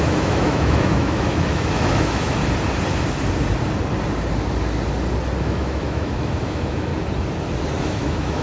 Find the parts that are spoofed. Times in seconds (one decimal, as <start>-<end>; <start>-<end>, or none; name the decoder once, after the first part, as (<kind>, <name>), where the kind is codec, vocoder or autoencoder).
0.0-2.4 (autoencoder, DAC-VAE); 5.4-6.9; 7.8-8.4